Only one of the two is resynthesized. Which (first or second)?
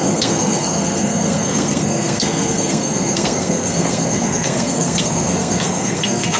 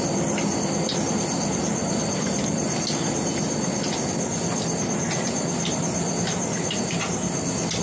first